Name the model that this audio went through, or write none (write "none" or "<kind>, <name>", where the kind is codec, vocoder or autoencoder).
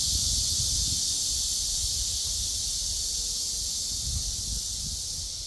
none